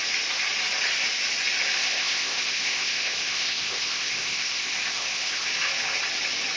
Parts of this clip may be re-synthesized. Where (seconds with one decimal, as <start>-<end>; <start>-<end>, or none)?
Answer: 1.8-5.5